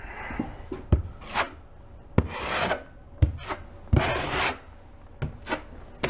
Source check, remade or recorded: recorded